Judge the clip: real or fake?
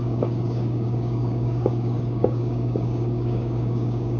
fake